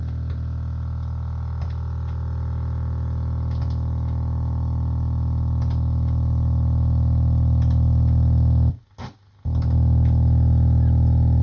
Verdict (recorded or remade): recorded